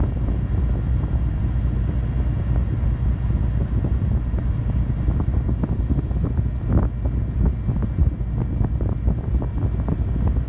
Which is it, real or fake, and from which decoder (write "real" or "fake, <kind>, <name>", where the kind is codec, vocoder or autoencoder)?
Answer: real